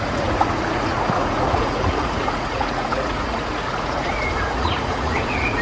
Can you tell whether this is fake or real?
fake